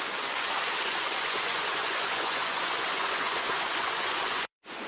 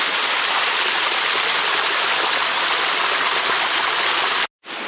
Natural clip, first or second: second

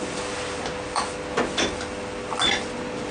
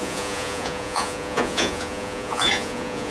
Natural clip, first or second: first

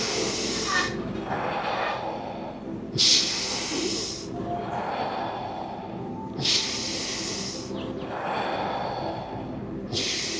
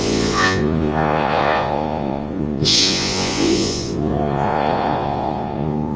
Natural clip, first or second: first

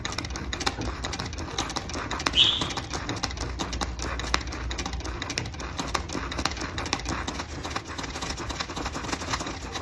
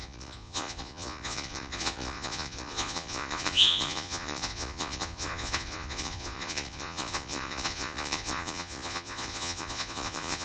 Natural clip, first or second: first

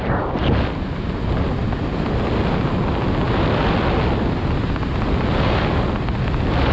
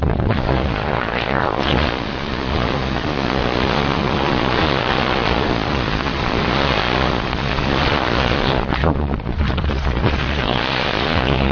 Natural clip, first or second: first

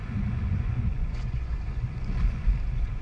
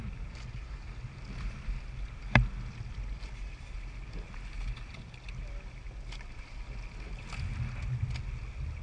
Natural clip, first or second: second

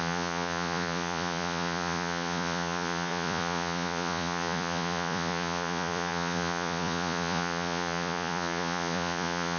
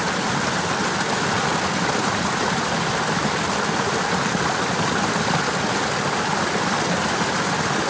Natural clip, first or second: second